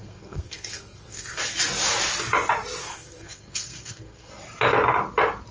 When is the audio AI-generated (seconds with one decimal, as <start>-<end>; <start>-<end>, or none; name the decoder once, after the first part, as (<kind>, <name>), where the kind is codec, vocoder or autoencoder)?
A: 0.0-1.4 (codec, SNAC); 2.8-4.3